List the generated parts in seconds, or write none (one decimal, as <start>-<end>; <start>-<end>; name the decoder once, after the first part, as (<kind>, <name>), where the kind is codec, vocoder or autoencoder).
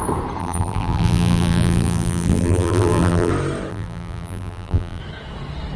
0.4-3.3 (vocoder, BigVGAN v2); 3.7-5.0